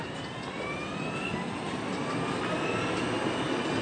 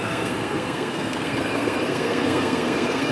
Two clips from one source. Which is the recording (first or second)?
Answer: first